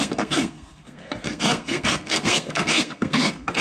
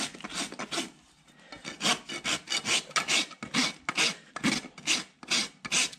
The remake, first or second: first